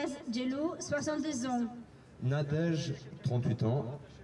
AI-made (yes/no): no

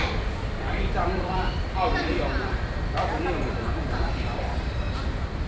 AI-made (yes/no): yes